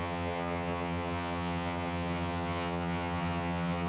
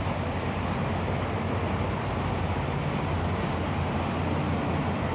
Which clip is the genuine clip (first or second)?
second